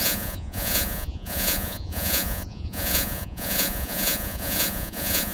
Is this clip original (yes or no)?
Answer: no